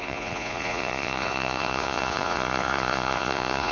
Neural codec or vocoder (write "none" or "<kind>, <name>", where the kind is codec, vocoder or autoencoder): vocoder, Vocos